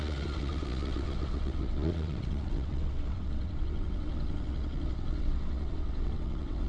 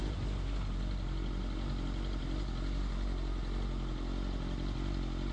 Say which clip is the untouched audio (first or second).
second